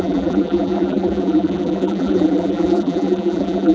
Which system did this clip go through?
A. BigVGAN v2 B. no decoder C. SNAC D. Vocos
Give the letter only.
A